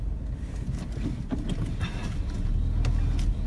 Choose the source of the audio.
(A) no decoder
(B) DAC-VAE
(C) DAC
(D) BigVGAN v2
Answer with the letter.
A